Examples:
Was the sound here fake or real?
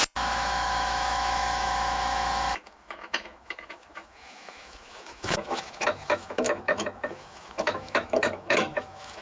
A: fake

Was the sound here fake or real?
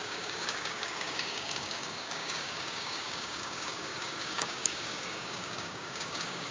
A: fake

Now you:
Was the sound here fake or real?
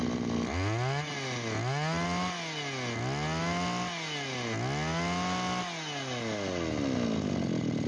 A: real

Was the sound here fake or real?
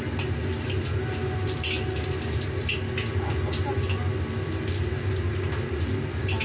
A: real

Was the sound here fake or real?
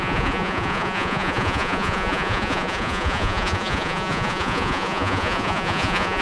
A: fake